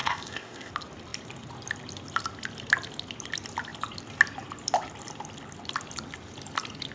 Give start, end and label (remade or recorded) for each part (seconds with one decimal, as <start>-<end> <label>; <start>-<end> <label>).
0.0-0.7 remade; 0.7-6.9 recorded